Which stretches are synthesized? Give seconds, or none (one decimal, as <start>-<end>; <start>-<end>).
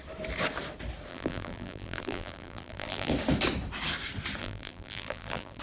1.1-3.1; 4.4-5.6